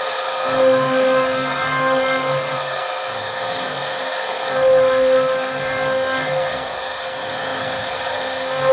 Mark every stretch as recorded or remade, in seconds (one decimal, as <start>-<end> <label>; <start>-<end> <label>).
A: 0.0-8.7 remade